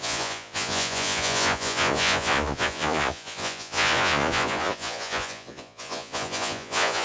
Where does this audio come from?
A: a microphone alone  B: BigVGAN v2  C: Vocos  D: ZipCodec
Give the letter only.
C